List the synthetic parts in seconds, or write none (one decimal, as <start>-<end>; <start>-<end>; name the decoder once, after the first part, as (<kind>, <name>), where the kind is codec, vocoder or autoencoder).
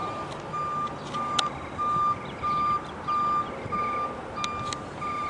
none